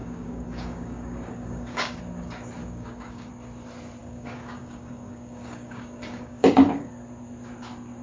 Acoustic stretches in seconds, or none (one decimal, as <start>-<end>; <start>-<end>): 2.0-2.6; 3.3-4.0; 6.9-8.0